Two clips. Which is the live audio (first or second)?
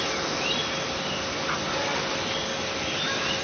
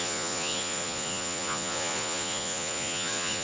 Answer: first